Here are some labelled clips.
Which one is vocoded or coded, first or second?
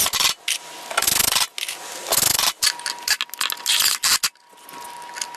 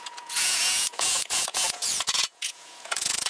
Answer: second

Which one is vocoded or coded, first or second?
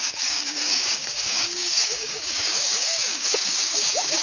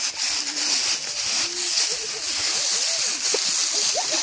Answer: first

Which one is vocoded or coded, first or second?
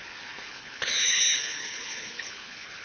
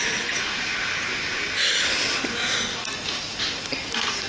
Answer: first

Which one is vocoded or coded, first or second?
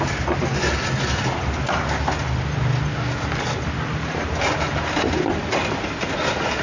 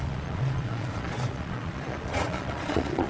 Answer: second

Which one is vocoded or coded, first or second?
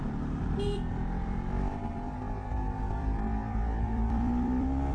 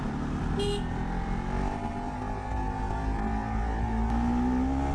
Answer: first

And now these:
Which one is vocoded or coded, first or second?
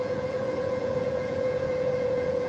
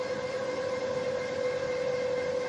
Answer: first